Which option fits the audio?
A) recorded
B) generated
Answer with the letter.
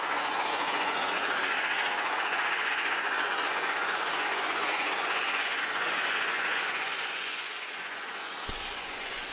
B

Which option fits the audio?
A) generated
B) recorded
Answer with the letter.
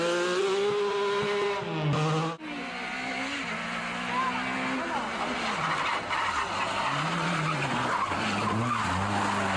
B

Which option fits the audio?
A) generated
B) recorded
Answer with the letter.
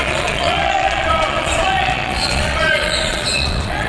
A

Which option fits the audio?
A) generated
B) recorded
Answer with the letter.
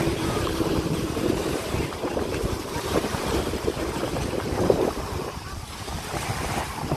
A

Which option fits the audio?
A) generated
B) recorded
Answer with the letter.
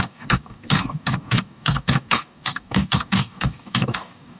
A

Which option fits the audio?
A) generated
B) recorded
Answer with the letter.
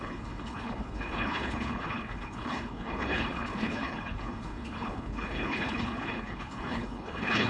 A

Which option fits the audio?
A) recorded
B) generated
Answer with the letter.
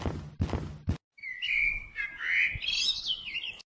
A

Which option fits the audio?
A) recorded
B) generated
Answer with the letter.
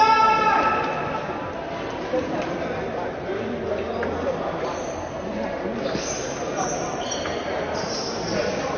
A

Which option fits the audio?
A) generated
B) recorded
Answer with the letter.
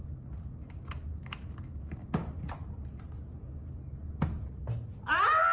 B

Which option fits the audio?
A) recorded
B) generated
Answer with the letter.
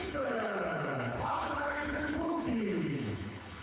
B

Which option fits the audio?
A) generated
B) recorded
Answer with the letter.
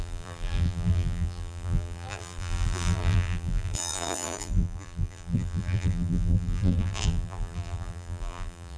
A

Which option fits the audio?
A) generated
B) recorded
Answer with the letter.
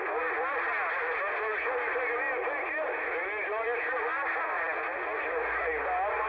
B